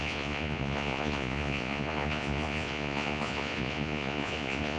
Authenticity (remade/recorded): remade